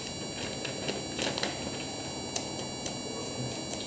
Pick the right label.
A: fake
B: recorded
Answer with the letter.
B